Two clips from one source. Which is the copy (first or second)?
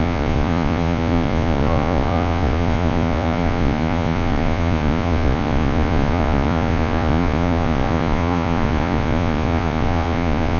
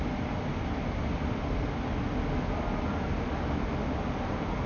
first